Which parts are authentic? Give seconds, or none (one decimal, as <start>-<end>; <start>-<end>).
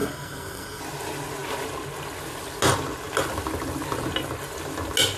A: 0.8-5.2